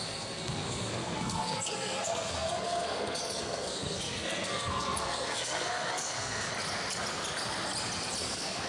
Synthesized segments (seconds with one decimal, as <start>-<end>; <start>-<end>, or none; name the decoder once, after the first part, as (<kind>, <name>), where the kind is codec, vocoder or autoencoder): 0.0-6.5 (codec, SNAC); 8.2-8.7